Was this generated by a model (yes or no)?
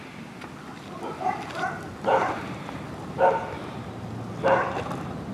no